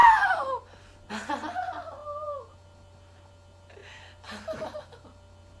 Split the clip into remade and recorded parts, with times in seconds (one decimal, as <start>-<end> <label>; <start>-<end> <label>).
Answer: 0.0-5.6 recorded